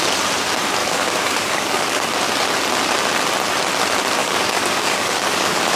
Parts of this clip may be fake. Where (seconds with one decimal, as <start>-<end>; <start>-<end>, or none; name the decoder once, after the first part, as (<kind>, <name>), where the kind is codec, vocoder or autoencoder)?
0.8-2.0 (codec, DAC); 4.2-5.8